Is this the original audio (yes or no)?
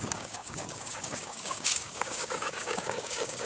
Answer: no